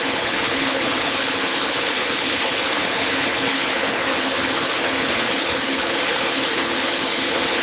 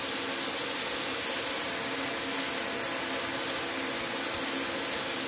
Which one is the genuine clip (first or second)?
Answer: second